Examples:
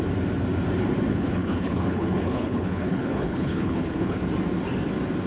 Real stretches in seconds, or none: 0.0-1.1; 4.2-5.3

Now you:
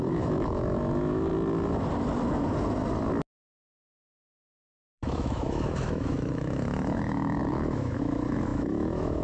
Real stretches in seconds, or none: 1.3-4.3

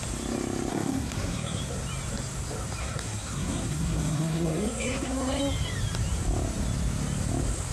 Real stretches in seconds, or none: 0.0-0.7; 1.6-2.8; 5.4-7.7

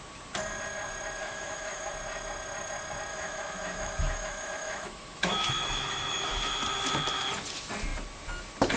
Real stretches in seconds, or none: 0.0-1.2; 1.9-3.1; 6.5-8.8

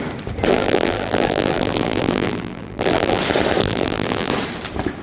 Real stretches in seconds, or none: 0.0-0.5; 3.2-3.6; 4.3-5.0

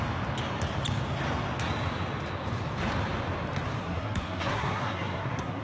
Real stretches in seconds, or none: 0.0-3.8

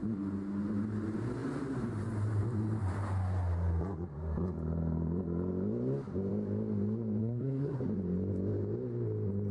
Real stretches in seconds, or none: 0.0-7.2; 7.8-9.5